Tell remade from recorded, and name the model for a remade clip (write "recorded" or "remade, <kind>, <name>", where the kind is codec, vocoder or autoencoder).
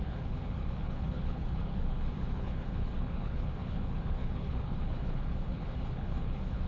remade, codec, HILCodec